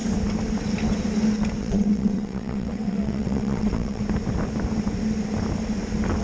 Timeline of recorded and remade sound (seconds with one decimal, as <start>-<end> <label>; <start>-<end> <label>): 0.0-1.6 recorded; 1.6-4.0 remade; 4.0-6.2 recorded